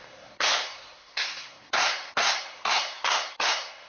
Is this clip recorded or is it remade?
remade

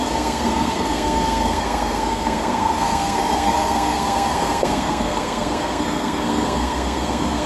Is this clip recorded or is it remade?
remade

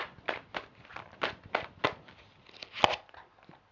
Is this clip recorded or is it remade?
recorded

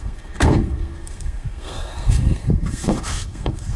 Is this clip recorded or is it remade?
remade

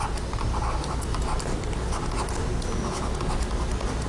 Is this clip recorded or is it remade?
recorded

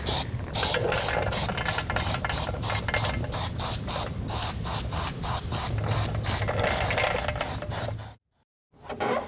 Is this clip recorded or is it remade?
recorded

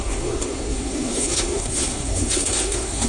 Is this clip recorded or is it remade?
remade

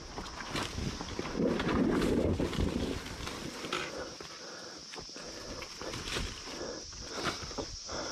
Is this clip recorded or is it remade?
recorded